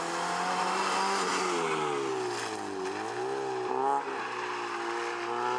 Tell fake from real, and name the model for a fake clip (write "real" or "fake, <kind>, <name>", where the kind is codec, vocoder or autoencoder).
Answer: real